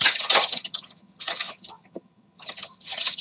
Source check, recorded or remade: remade